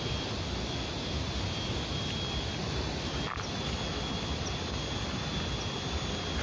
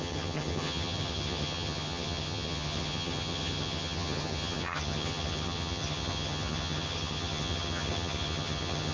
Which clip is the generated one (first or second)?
second